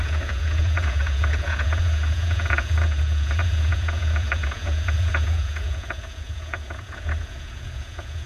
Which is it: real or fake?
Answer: fake